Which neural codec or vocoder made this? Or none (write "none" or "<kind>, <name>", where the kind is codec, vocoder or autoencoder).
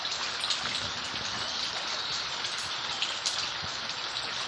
none